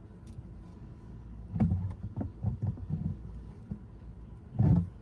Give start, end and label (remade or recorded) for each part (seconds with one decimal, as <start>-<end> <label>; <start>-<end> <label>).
0.0-0.7 recorded; 0.7-3.7 remade; 3.7-5.0 recorded

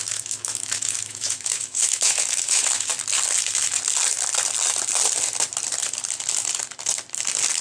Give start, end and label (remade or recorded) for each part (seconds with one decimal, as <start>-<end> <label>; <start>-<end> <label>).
0.0-2.9 remade; 2.9-7.6 recorded

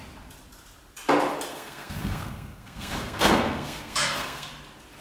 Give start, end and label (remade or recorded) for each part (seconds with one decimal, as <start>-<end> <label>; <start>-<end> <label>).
0.0-1.5 recorded; 1.5-4.5 remade; 4.5-5.0 recorded

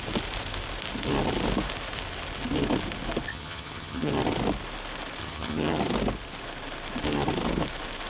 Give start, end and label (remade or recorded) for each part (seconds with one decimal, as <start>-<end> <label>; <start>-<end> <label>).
0.0-3.3 recorded; 3.3-4.1 remade; 4.1-5.2 recorded; 5.2-5.8 remade; 5.8-8.1 recorded

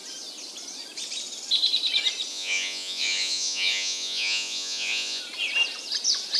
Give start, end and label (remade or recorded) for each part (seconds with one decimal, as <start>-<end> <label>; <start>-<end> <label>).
0.0-2.3 recorded; 2.3-5.2 remade; 5.2-6.4 recorded